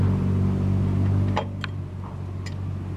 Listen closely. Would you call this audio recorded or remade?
recorded